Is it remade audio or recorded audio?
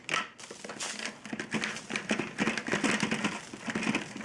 recorded